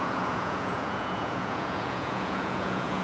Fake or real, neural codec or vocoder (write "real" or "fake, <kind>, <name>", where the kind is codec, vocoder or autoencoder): fake, vocoder, Vocos